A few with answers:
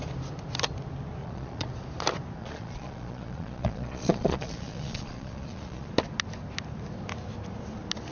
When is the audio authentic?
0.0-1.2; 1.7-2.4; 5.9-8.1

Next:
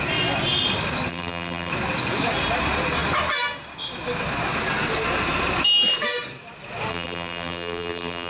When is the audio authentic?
0.0-1.1; 1.7-6.9

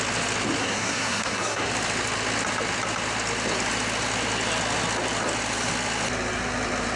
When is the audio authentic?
0.0-0.6; 1.7-7.0

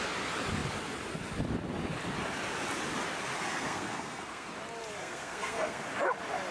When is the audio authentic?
0.0-3.5; 4.5-5.0; 5.8-6.5

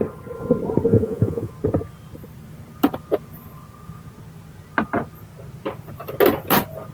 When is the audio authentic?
0.0-0.9; 1.5-6.9